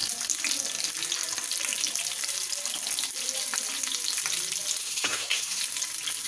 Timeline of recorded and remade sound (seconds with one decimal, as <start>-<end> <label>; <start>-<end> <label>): 0.0-4.8 recorded; 4.8-5.6 remade; 5.6-6.3 recorded